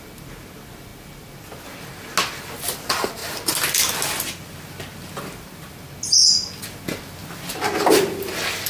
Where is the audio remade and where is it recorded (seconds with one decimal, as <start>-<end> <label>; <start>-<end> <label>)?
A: 0.0-8.7 recorded